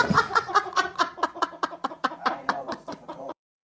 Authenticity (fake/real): fake